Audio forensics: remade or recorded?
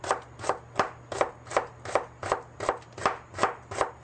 recorded